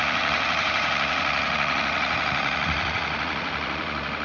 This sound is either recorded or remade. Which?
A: remade